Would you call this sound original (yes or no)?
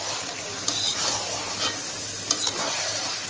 yes